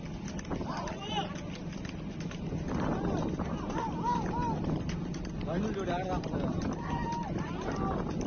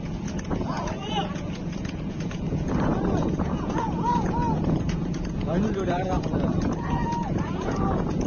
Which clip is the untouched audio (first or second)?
first